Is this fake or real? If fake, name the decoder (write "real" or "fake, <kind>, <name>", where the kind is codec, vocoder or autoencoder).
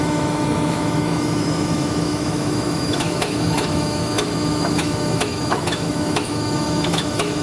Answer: fake, autoencoder, DAC-VAE